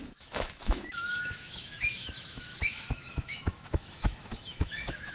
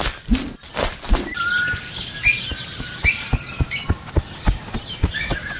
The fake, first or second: first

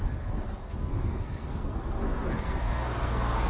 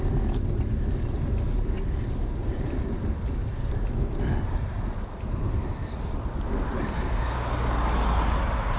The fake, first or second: first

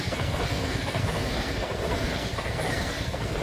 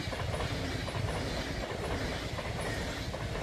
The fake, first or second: first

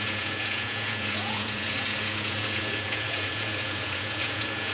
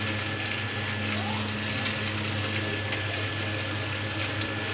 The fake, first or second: first